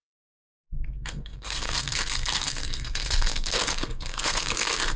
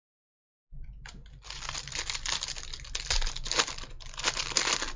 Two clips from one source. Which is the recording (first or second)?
second